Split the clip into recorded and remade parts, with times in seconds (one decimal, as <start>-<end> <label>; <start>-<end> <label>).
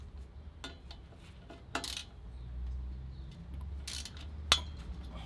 0.0-5.3 recorded